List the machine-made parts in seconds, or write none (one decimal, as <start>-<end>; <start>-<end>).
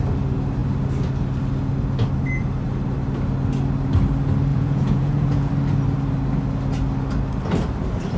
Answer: 4.5-5.5